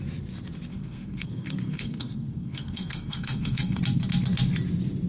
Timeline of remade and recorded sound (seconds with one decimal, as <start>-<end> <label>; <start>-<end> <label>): 0.0-0.7 recorded; 0.7-3.8 remade; 3.8-5.1 recorded